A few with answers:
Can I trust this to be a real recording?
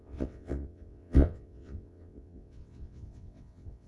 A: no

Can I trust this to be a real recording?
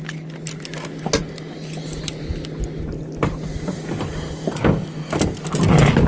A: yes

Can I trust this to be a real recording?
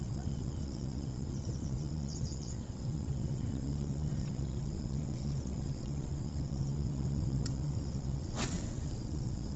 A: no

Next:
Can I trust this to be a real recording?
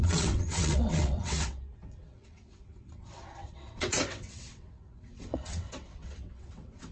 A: no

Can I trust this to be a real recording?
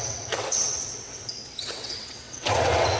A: no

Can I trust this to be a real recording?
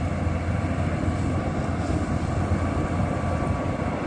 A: yes